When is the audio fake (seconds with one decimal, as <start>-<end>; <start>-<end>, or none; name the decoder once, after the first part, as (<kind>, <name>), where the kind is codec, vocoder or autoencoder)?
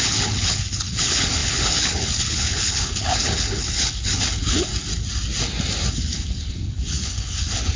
0.0-4.7 (codec, HILCodec); 5.9-7.8